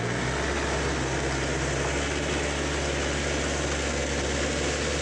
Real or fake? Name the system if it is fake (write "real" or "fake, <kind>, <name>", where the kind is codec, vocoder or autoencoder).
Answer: real